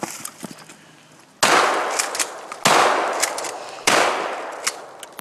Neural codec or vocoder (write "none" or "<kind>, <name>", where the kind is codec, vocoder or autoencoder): none